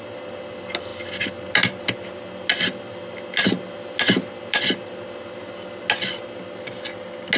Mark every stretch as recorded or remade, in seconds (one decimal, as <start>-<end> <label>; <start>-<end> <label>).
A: 0.0-7.4 recorded